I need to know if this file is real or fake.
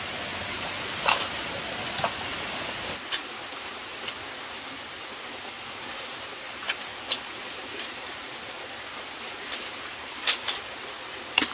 real